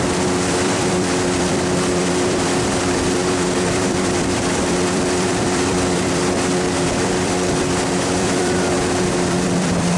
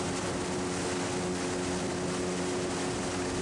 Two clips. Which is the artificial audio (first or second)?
first